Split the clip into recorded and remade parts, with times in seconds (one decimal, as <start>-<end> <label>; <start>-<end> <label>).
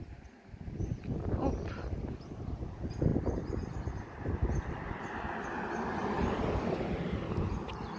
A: 0.0-8.0 recorded